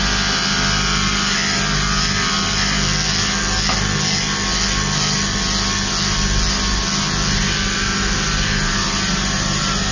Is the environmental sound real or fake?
real